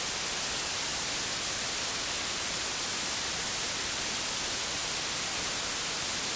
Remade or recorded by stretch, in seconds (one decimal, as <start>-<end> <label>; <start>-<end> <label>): 0.0-6.4 recorded